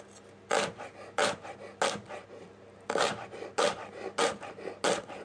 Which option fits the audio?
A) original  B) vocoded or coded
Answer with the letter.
A